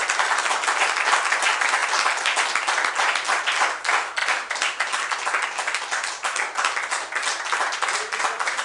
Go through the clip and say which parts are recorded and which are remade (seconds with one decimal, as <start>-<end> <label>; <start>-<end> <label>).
0.0-8.6 recorded